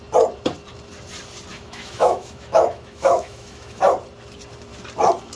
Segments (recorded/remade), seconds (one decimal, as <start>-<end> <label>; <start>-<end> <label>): 0.0-1.5 recorded; 1.5-3.8 remade; 3.8-5.4 recorded